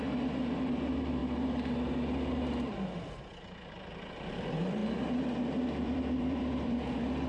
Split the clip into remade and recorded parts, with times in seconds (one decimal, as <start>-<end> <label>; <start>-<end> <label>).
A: 0.0-1.2 remade; 1.2-3.4 recorded; 3.4-4.8 remade; 4.8-5.8 recorded; 5.8-7.3 remade